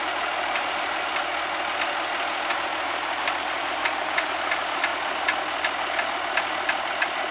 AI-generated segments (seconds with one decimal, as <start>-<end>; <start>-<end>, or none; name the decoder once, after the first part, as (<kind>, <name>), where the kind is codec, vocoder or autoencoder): 0.0-1.1 (vocoder, BigVGAN v2); 3.2-4.9